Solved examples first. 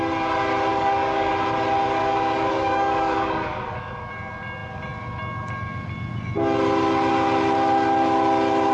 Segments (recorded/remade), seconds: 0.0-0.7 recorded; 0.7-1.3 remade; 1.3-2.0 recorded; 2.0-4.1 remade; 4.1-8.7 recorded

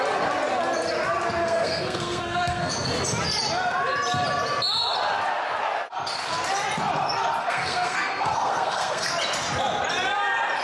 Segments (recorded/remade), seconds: 0.0-1.4 recorded; 1.4-2.7 remade; 2.7-7.4 recorded; 7.4-9.1 remade; 9.1-10.6 recorded

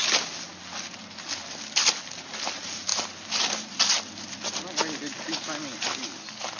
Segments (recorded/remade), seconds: 0.0-6.6 recorded

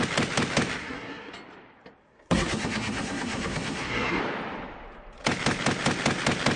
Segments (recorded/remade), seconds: 0.0-0.8 recorded; 0.8-1.3 remade; 1.3-2.0 recorded; 2.0-4.2 remade; 4.2-6.6 recorded

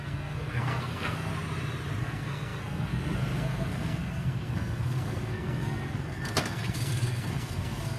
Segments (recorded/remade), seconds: 0.0-1.3 remade; 1.3-2.0 recorded; 2.0-8.0 remade

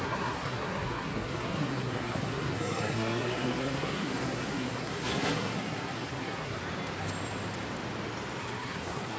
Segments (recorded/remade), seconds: 0.0-6.6 remade; 6.6-8.4 recorded; 8.4-9.2 remade

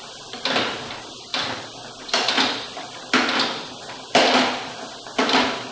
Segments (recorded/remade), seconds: 0.0-1.3 recorded; 1.3-4.7 remade; 4.7-5.7 recorded

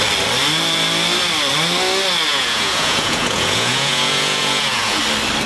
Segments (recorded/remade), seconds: 0.0-2.3 recorded; 2.3-5.0 remade; 5.0-5.5 recorded